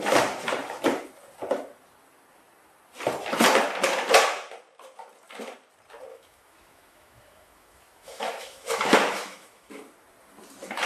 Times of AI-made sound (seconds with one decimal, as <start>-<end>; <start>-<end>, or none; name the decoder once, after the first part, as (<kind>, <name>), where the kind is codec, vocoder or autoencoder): 6.1-9.7 (autoencoder, DAC-VAE)

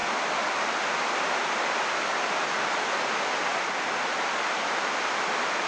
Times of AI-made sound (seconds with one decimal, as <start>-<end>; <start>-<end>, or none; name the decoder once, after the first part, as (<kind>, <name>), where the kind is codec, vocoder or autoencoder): none

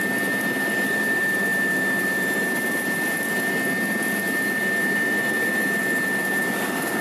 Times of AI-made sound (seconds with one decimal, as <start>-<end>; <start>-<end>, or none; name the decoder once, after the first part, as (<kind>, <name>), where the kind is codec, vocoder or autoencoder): none

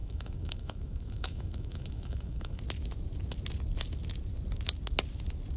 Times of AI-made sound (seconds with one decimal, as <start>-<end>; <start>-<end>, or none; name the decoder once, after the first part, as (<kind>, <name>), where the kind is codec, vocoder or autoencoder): 0.0-2.6 (autoencoder, DAC-VAE)

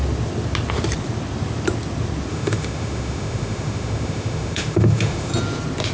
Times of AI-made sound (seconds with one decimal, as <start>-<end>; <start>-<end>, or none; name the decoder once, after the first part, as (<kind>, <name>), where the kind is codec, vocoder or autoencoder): 2.3-5.3 (autoencoder, DAC-VAE)

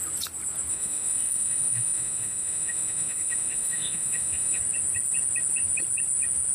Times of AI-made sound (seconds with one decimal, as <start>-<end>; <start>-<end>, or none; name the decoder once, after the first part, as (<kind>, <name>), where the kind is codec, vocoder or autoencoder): 0.7-4.6 (autoencoder, DAC-VAE)

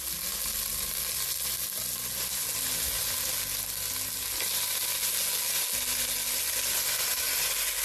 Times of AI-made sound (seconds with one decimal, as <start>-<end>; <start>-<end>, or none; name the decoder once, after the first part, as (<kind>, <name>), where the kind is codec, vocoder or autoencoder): none

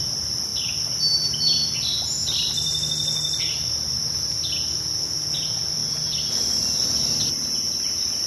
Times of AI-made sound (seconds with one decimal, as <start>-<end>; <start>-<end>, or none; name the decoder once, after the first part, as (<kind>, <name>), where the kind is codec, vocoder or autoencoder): none